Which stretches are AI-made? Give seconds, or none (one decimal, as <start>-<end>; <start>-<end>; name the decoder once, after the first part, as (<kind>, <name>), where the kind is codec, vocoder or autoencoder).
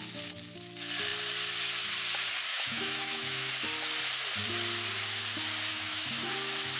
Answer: 2.5-3.5 (autoencoder, DAC-VAE); 5.7-6.3